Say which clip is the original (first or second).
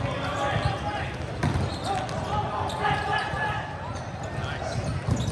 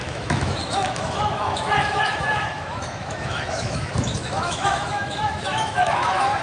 first